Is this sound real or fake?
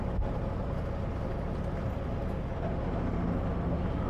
real